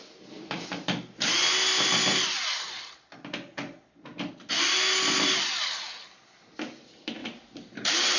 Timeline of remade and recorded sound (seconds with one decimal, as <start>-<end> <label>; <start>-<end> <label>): 0.0-7.2 recorded; 7.2-8.2 remade

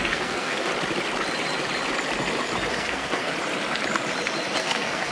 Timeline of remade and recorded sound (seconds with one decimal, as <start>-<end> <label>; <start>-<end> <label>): 0.0-0.7 remade; 0.7-2.7 recorded; 2.7-3.3 remade; 3.3-4.6 recorded; 4.6-5.1 remade

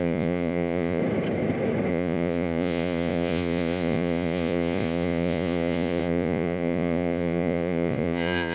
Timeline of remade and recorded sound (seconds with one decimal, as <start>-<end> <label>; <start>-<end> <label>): 0.0-1.0 remade; 1.0-1.9 recorded; 1.9-8.5 remade

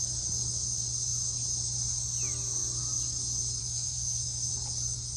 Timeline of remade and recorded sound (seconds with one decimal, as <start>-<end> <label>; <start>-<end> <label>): 0.0-3.6 recorded; 3.6-4.5 remade; 4.5-5.2 recorded

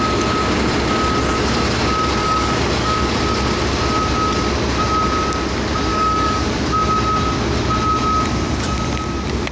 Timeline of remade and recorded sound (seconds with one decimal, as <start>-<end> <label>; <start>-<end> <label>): 0.0-2.2 recorded; 2.2-3.1 remade; 3.1-5.9 recorded; 5.9-6.6 remade; 6.6-9.5 recorded

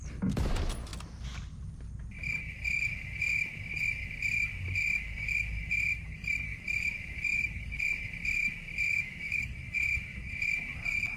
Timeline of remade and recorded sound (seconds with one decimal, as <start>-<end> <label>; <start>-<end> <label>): 0.0-8.9 recorded; 8.9-9.4 remade; 9.4-11.2 recorded

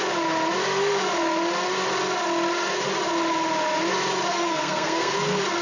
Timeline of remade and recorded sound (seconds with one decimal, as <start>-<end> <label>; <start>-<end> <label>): 0.0-4.3 recorded; 4.3-5.1 remade; 5.1-5.6 recorded